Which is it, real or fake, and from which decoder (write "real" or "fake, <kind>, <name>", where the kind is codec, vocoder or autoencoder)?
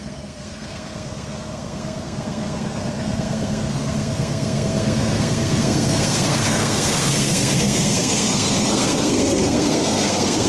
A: fake, codec, SNAC